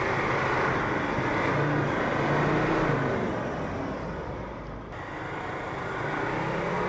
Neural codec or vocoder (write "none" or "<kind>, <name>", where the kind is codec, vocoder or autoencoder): none